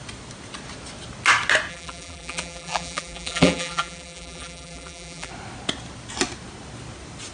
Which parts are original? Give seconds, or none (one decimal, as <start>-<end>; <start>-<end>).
0.0-1.7; 5.3-7.3

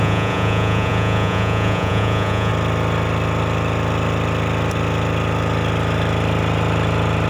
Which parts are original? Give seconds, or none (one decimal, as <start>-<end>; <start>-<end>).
2.5-7.3

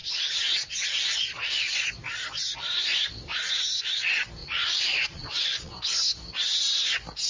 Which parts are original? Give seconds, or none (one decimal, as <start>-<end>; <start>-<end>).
1.7-4.4; 5.7-7.3

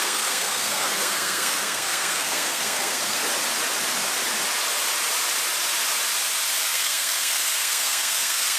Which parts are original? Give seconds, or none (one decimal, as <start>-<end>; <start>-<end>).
3.2-6.6

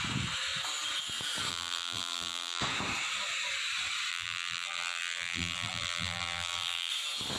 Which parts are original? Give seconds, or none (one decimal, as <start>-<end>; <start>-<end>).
0.0-1.5; 2.6-4.1; 6.9-7.4